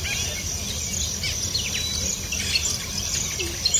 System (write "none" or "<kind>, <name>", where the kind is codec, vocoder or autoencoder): none